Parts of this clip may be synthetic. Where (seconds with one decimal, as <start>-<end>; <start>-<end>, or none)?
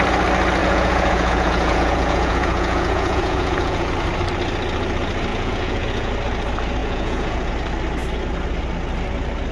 0.6-3.9; 5.3-6.1; 6.8-7.5